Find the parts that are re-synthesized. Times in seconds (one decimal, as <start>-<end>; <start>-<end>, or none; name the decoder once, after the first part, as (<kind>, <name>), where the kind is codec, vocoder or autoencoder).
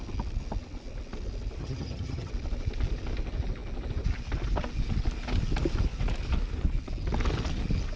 1.6-2.3 (vocoder, HiFi-GAN)